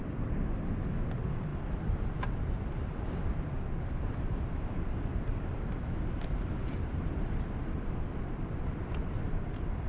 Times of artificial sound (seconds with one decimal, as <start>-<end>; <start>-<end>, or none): 0.0-1.5; 4.4-9.9

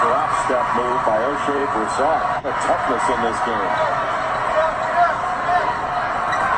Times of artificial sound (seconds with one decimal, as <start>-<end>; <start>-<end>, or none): 0.0-1.6; 5.6-6.6

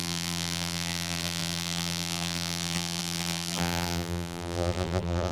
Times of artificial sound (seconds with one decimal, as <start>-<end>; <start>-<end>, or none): 0.0-5.3